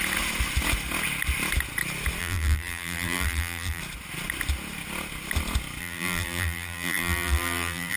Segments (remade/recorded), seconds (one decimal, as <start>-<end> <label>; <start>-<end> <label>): 0.0-2.2 recorded; 2.2-3.8 remade; 3.8-5.8 recorded; 5.8-8.0 remade